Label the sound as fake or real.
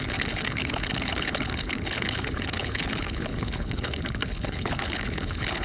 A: fake